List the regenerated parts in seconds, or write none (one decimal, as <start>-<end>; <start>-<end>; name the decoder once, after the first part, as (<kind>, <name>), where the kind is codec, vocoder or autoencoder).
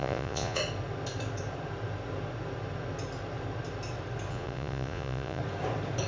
0.0-0.6 (vocoder, Vocos); 4.3-5.4